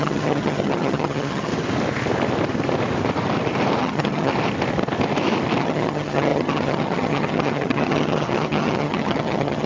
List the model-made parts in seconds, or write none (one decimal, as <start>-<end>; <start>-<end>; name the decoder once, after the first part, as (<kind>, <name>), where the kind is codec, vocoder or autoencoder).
0.0-1.5 (vocoder, HiFi-GAN); 3.8-4.3; 5.6-9.7